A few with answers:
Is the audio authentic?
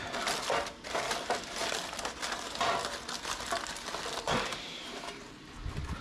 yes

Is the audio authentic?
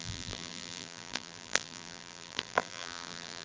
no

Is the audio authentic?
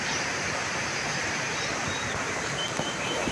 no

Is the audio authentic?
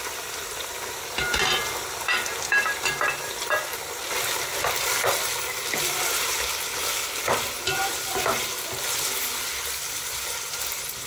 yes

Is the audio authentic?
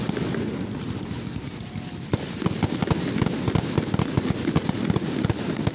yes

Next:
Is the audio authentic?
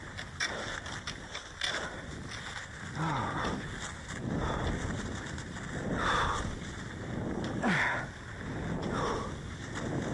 yes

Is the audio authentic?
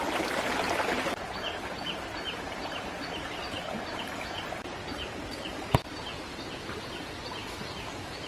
no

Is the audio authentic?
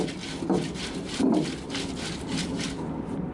yes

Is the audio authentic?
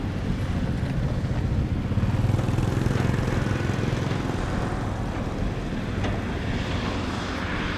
yes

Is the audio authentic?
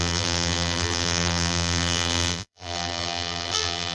no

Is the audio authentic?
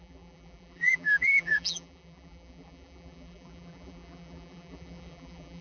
no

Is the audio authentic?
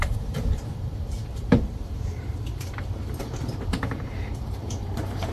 no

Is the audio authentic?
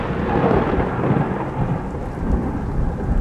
yes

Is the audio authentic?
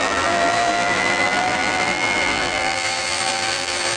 no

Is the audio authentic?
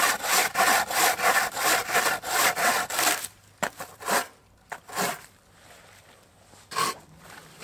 no